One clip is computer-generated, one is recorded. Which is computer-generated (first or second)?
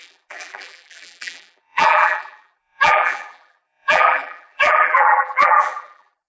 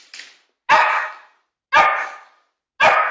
first